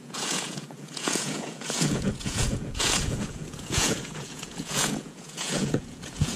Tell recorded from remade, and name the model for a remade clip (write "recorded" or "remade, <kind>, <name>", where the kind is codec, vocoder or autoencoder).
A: remade, vocoder, Vocos